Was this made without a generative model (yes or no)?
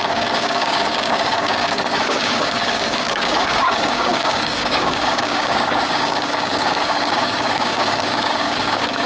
no